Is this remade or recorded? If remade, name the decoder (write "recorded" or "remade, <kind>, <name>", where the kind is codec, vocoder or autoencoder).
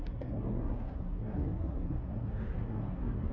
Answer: remade, codec, SNAC